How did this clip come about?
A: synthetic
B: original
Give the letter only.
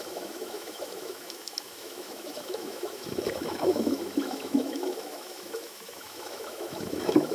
A